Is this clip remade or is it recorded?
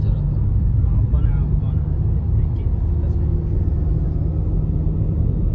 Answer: recorded